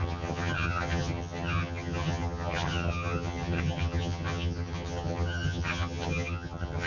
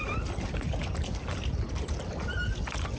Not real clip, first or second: first